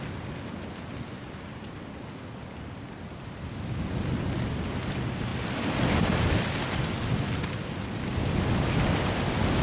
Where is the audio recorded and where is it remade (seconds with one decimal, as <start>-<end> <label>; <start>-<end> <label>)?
0.0-9.6 recorded